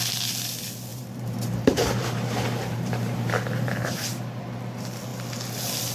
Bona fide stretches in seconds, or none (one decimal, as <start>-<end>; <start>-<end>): 0.0-0.9; 4.4-5.9